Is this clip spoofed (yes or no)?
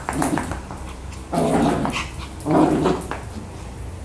no